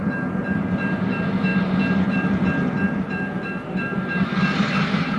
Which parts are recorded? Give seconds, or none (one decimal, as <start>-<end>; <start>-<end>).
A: 0.0-5.2